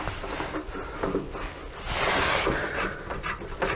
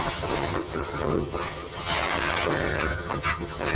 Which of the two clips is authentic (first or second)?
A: first